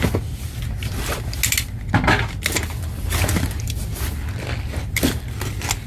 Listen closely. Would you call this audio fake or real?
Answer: real